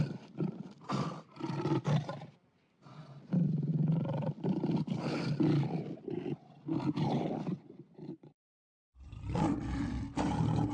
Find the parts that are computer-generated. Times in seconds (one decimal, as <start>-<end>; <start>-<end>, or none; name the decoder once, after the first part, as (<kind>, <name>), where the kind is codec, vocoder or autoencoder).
none